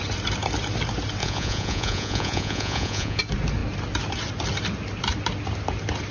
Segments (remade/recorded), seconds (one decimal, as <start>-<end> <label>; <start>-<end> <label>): 0.0-1.2 recorded; 1.2-3.2 remade; 3.2-6.1 recorded